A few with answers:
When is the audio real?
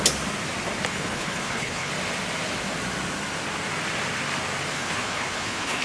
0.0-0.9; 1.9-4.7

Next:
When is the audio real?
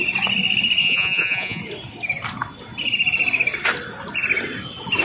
0.0-0.8; 1.6-5.0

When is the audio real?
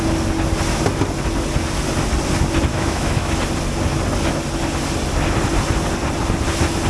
0.0-2.7; 3.3-6.9